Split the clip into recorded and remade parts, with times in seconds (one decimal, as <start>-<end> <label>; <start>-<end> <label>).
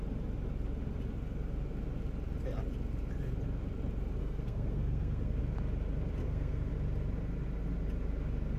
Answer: 0.0-4.2 recorded; 4.2-5.4 remade; 5.4-6.2 recorded; 6.2-6.7 remade; 6.7-8.6 recorded